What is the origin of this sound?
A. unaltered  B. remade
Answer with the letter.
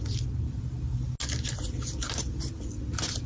A